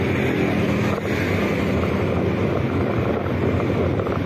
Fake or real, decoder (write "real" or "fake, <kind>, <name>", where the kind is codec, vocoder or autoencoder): real